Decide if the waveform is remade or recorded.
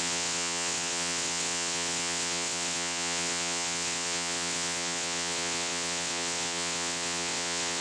remade